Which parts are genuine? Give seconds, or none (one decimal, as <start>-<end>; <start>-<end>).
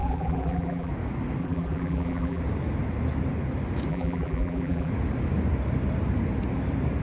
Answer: 0.9-1.4; 2.4-3.9; 4.9-7.0